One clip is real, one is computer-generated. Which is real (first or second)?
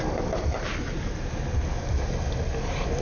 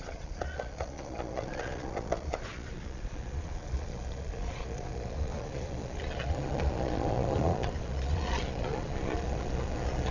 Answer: first